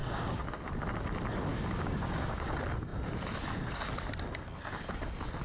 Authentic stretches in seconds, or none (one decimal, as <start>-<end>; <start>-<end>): 0.7-1.5; 2.5-5.4